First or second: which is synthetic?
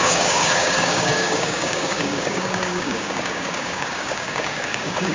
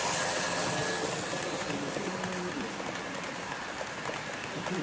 first